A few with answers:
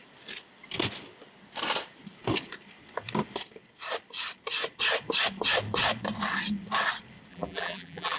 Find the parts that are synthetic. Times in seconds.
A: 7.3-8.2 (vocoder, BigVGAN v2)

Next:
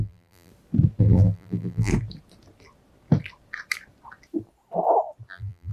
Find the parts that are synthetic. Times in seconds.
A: 0.0-0.5 (vocoder, BigVGAN v2); 1.0-1.9; 5.3-5.7

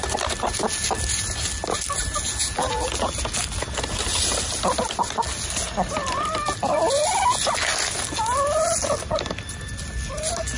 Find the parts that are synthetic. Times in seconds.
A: 2.4-3.1 (vocoder, BigVGAN v2)

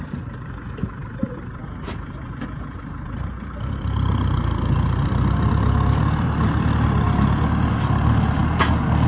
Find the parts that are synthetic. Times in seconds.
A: 0.0-8.4 (vocoder, BigVGAN v2)

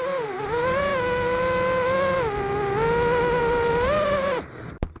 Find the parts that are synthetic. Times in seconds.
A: 0.0-0.9 (vocoder, BigVGAN v2); 3.4-5.0

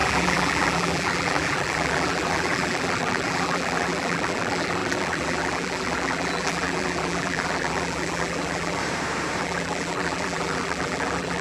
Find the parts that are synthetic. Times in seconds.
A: 0.0-8.8 (vocoder, BigVGAN v2); 9.4-11.4